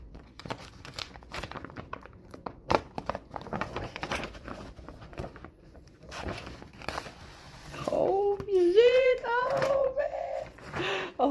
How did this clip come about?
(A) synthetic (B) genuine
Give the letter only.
A